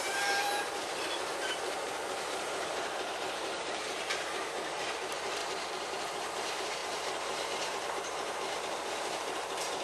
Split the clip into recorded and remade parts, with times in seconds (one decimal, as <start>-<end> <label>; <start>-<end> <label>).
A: 0.0-9.8 remade